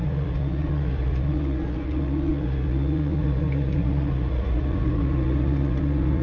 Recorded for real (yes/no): no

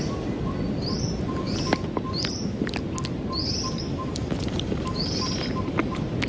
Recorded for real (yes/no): yes